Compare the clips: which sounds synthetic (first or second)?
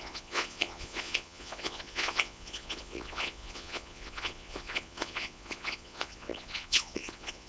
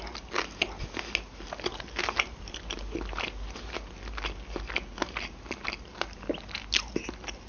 first